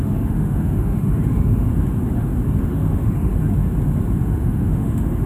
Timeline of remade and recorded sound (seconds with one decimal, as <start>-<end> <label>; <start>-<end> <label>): 0.0-1.7 remade; 1.7-2.6 recorded; 2.6-3.3 remade; 3.3-4.2 recorded; 4.2-5.3 remade

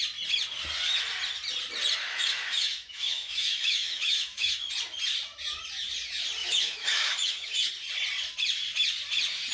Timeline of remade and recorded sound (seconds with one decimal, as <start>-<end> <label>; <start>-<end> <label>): 0.0-2.1 recorded; 2.1-4.7 remade; 4.7-6.4 recorded; 6.4-7.7 remade; 7.7-9.5 recorded

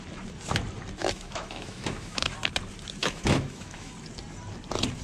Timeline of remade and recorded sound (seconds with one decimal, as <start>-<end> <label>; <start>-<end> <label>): 0.0-1.0 recorded; 1.0-2.3 remade; 2.3-3.0 recorded; 3.0-3.9 remade; 3.9-5.0 recorded

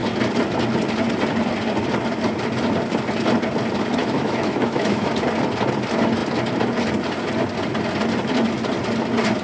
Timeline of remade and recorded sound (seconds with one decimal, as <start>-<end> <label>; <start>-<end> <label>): 0.0-4.0 recorded; 4.0-5.1 remade; 5.1-9.4 recorded

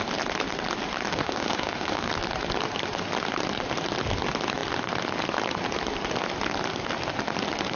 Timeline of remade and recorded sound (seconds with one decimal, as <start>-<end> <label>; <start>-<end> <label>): 0.0-1.1 recorded; 1.1-2.1 remade; 2.1-7.8 recorded

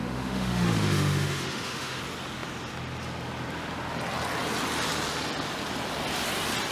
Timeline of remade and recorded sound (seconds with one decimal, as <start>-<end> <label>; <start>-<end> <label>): 0.0-2.0 remade; 2.0-6.7 recorded

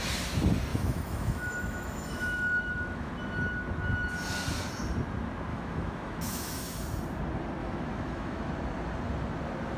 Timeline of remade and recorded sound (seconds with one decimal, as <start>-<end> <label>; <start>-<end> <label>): 0.0-0.7 recorded; 0.7-3.1 remade; 3.1-5.5 recorded; 5.5-6.8 remade; 6.8-7.6 recorded; 7.6-8.5 remade; 8.5-9.8 recorded